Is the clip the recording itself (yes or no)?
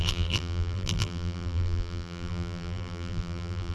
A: no